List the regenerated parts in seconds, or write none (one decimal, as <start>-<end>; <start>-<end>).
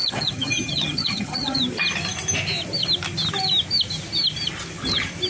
0.0-1.6